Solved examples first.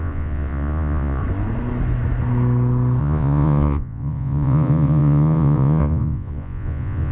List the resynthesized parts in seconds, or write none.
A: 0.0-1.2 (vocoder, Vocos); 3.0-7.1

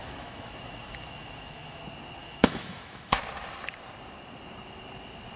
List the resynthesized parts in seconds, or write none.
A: 0.0-1.8 (autoencoder, DAC-VAE); 2.2-3.2

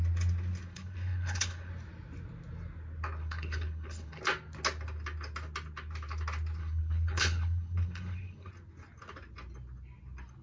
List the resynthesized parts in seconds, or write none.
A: 0.7-1.7 (codec, HILCodec); 3.2-4.2; 6.6-8.5

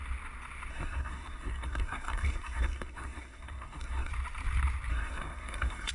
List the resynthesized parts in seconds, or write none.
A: 0.7-4.1 (codec, SNAC); 4.9-5.9

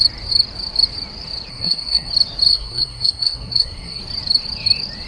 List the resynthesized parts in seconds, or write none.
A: 1.5-2.1 (codec, SNAC); 2.5-4.0